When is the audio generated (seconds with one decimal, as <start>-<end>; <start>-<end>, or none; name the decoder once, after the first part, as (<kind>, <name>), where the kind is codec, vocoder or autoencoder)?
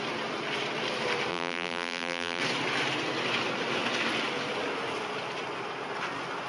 1.3-2.4 (vocoder, BigVGAN v2)